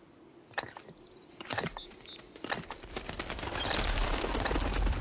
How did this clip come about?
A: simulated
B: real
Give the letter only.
B